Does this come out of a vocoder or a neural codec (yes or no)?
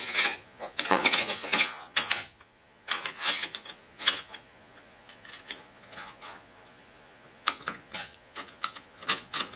yes